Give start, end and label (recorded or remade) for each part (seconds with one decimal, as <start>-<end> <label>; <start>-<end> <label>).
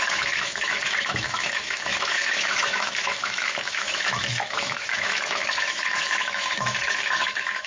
0.0-7.7 remade